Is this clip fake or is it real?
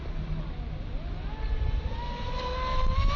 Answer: real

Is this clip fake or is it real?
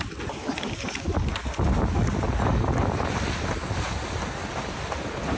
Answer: real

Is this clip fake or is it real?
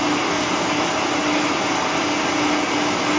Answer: real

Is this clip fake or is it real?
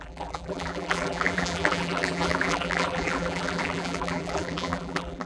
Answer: fake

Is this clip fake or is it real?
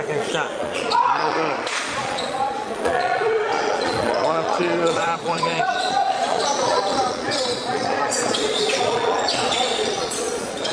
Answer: fake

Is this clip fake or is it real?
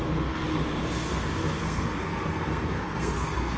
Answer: fake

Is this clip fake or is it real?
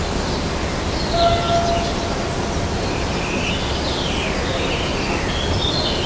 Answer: real